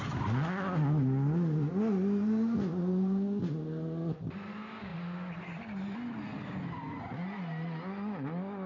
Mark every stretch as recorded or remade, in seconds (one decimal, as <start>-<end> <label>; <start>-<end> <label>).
0.0-8.7 recorded